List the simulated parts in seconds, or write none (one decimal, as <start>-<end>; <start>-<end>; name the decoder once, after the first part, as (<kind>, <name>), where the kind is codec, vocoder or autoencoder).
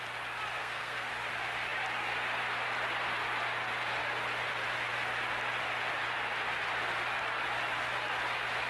0.6-1.1 (codec, SNAC)